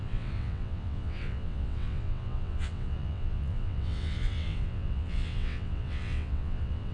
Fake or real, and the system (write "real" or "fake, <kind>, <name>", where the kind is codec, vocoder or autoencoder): fake, vocoder, WaveNeXt